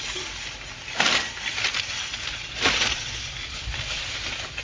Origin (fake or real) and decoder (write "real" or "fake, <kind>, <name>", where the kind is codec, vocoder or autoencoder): real